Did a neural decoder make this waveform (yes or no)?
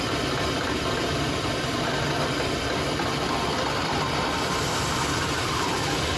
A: yes